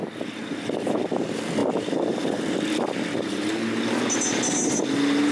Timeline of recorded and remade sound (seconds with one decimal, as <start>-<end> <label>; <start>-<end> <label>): 0.0-5.3 recorded